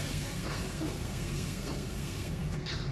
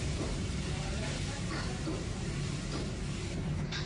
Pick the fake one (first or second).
first